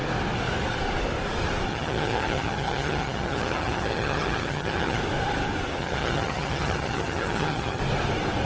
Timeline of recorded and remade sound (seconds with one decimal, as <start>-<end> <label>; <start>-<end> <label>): 0.0-1.7 recorded; 1.7-5.0 remade; 5.0-5.8 recorded; 5.8-7.8 remade; 7.8-8.4 recorded